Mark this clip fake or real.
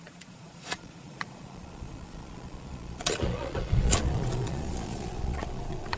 fake